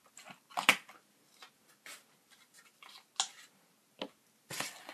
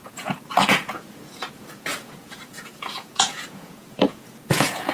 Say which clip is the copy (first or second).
second